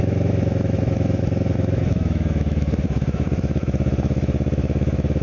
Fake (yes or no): yes